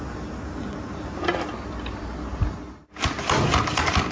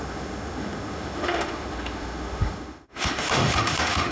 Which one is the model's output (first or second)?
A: second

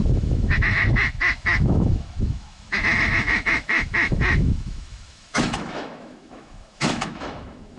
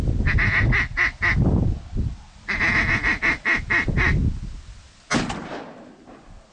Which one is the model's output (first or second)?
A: first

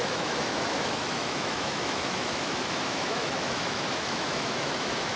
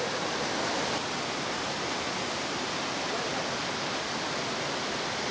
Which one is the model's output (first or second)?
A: first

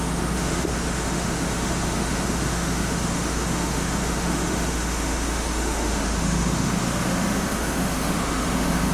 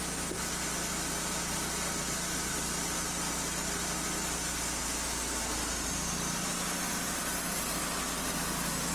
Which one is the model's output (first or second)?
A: first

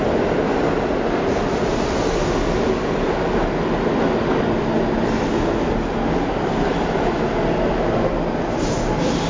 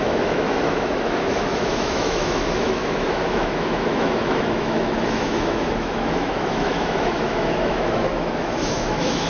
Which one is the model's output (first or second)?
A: second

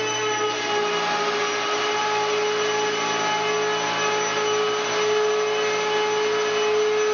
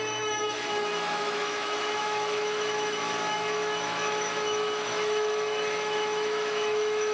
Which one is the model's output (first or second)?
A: second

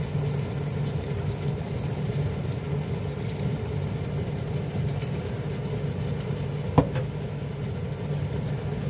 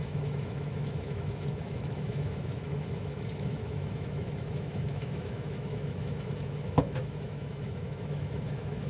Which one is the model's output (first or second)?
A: second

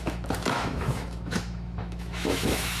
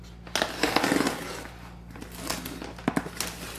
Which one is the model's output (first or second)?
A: first